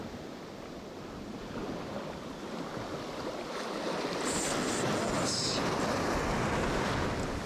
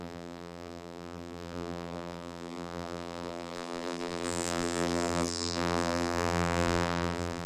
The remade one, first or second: second